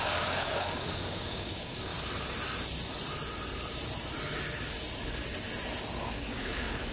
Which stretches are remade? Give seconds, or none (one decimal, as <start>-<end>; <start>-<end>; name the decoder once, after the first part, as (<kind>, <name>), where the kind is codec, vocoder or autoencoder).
0.0-1.9 (codec, DAC); 6.0-6.9